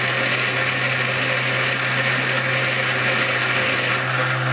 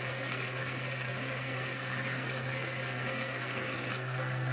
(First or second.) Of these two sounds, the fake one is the second